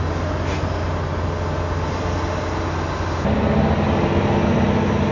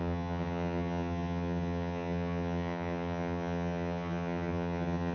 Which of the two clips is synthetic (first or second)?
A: second